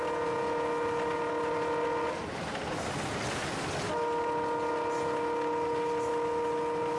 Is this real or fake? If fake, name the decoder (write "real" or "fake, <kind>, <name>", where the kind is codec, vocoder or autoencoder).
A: real